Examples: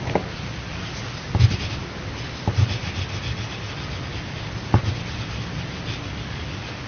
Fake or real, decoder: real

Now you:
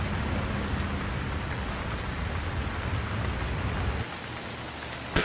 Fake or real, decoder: real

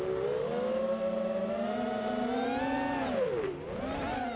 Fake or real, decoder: real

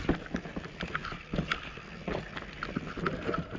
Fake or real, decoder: real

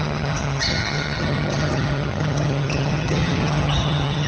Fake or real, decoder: fake, vocoder, HiFi-GAN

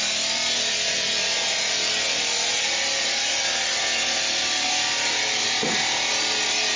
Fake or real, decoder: real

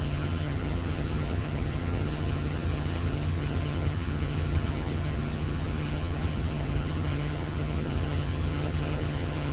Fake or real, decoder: fake, vocoder, HiFi-GAN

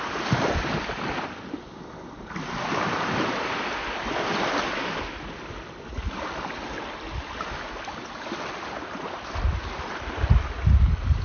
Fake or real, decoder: real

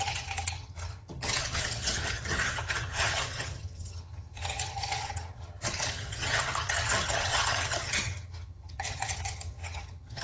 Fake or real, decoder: fake, vocoder, HiFi-GAN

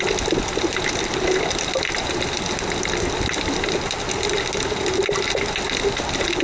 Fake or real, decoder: real